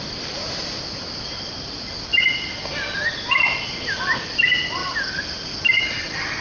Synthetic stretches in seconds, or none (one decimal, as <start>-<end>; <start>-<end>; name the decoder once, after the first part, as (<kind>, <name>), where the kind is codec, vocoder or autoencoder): none